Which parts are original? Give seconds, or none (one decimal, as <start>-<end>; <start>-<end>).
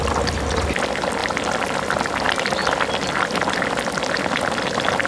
0.0-5.1